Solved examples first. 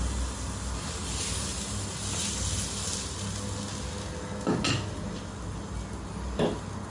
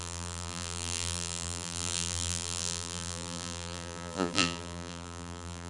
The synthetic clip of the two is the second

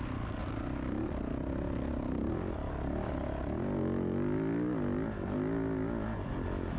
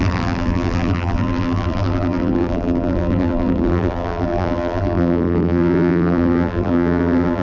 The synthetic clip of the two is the second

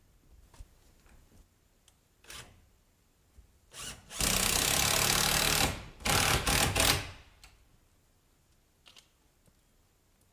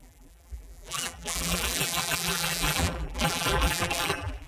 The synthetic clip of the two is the second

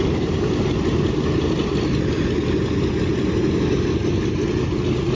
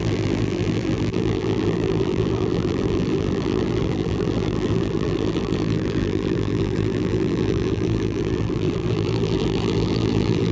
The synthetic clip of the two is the second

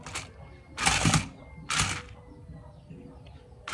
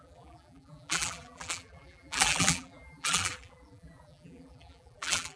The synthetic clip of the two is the second